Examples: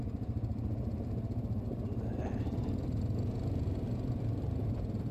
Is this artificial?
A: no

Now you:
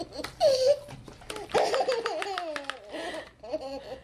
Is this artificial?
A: no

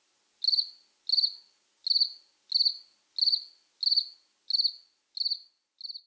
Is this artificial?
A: no